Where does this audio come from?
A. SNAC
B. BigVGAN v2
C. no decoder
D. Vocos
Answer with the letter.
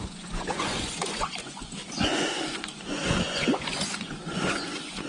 D